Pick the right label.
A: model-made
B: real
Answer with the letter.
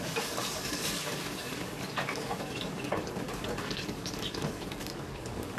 A